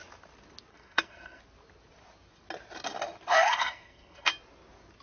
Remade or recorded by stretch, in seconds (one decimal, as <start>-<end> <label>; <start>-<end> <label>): 0.0-0.7 recorded; 0.7-1.4 remade; 1.4-3.3 recorded; 3.3-4.3 remade; 4.3-5.0 recorded